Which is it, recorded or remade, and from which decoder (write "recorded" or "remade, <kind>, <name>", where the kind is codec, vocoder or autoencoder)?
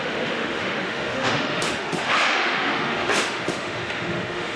remade, autoencoder, DAC-VAE